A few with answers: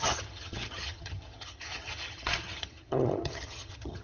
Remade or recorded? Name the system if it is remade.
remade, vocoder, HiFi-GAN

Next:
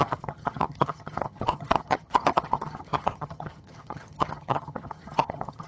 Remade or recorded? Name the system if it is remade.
remade, vocoder, HiFi-GAN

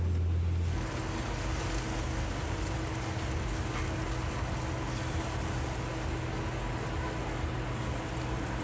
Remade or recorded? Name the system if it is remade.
recorded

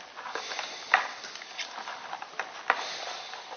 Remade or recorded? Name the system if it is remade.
recorded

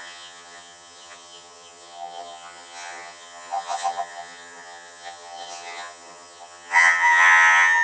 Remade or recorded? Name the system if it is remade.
remade, vocoder, HiFi-GAN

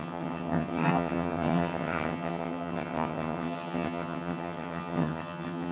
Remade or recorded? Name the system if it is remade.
remade, vocoder, HiFi-GAN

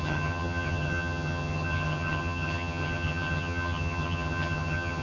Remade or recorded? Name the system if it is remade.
remade, vocoder, HiFi-GAN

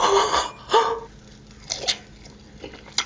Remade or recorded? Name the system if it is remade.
recorded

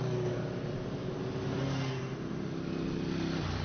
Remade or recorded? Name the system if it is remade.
recorded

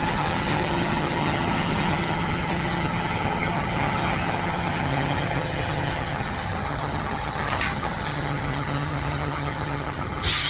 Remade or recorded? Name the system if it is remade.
remade, vocoder, HiFi-GAN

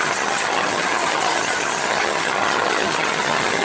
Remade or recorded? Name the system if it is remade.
remade, vocoder, HiFi-GAN